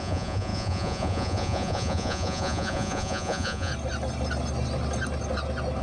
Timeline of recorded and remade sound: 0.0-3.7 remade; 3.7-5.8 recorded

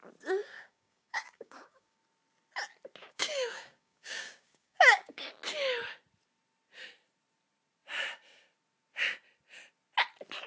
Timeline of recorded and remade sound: 0.0-0.4 recorded; 0.4-2.0 remade; 2.0-3.0 recorded; 3.0-5.3 remade; 5.3-10.5 recorded